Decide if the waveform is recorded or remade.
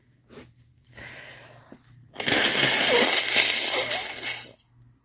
recorded